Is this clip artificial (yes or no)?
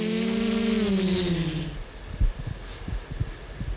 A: no